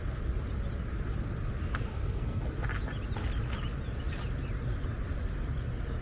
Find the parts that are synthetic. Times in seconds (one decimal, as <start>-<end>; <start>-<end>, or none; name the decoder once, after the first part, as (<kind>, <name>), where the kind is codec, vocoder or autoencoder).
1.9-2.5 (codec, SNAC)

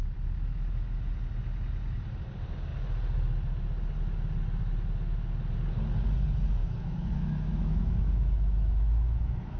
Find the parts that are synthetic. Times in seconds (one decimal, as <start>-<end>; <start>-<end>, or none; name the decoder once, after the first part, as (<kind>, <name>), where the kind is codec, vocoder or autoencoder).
6.6-9.6 (autoencoder, DAC-VAE)

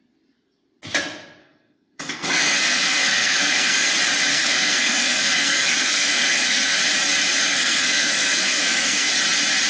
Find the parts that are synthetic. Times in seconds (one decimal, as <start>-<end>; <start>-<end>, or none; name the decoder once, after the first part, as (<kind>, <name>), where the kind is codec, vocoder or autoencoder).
1.4-3.9 (codec, SNAC); 4.3-6.8; 7.4-9.1

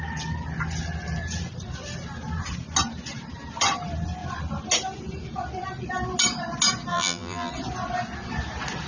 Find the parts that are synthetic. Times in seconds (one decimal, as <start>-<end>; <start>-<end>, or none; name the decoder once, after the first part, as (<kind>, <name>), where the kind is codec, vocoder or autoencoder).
6.9-7.5 (vocoder, BigVGAN v2)